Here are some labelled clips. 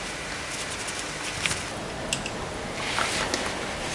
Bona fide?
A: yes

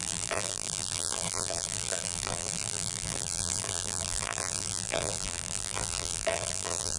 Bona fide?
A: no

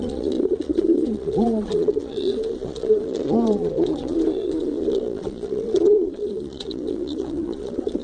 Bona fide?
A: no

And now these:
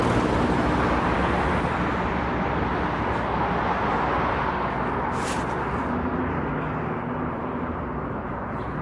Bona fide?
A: yes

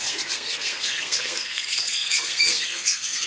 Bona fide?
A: no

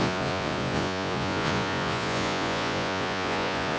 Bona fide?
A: no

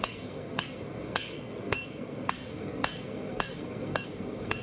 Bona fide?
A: no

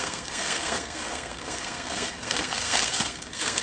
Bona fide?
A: no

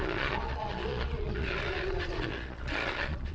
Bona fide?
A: no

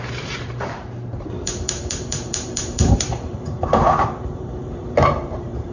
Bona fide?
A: no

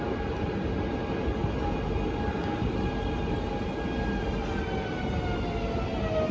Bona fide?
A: yes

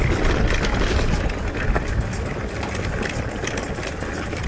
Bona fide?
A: yes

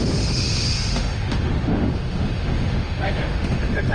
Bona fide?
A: no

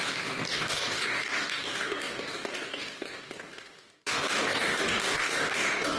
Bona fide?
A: no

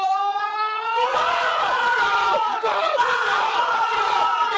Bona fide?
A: no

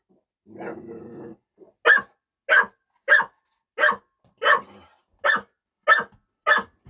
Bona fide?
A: yes